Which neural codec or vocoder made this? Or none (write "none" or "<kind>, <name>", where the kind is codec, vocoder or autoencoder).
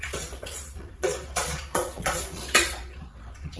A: vocoder, Vocos